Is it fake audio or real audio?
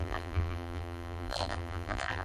fake